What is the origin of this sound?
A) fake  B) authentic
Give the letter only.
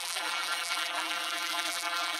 A